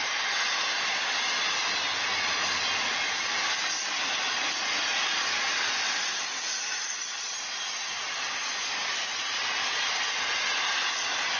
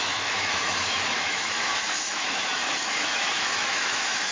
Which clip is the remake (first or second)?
second